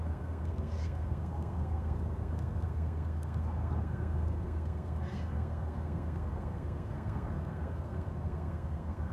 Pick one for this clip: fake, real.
fake